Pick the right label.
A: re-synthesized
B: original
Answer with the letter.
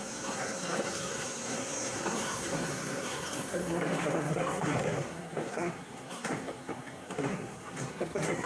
A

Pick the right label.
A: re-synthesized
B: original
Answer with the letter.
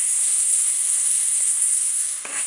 A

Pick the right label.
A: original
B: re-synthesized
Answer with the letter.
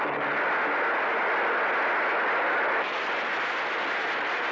A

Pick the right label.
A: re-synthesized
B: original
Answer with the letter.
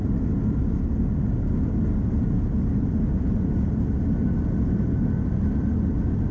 B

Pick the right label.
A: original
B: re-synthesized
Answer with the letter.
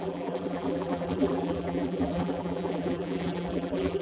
B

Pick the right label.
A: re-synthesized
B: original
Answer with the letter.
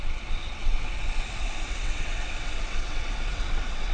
A